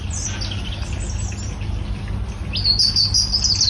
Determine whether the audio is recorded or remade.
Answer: recorded